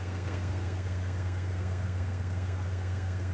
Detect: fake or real fake